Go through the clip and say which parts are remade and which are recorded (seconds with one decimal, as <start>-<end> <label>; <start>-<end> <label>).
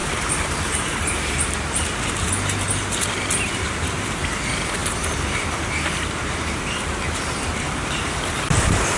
0.0-2.3 remade; 2.3-9.0 recorded